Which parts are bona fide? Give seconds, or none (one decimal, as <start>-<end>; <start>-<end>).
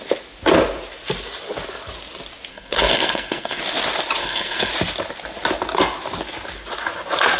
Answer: 0.0-2.5; 3.6-4.2; 4.7-7.4